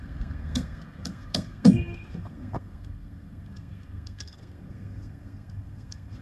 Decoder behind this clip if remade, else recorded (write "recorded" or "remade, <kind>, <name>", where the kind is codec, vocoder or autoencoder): remade, codec, SNAC